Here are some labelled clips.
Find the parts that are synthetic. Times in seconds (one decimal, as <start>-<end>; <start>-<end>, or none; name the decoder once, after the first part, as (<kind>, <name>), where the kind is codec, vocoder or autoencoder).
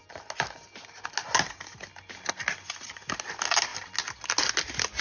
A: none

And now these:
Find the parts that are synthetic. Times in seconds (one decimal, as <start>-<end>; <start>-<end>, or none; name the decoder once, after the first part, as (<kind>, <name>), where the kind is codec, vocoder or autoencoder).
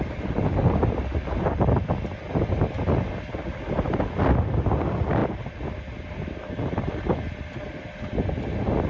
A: none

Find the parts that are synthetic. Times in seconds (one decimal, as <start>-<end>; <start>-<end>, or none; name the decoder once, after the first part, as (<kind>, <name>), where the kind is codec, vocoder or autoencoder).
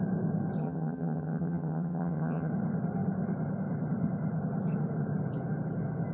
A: 0.6-2.5 (vocoder, HiFi-GAN)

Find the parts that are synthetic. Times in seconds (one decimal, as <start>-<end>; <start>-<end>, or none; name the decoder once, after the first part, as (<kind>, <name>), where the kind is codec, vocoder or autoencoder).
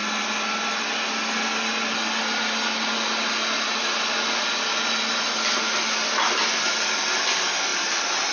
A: none